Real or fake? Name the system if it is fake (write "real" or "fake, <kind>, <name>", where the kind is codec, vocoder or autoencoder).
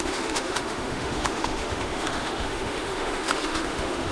fake, autoencoder, DAC-VAE